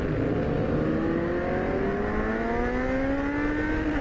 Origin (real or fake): real